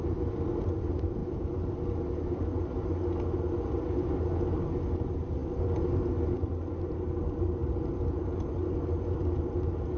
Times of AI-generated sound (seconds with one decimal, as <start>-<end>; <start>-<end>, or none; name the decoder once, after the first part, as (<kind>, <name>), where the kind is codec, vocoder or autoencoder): none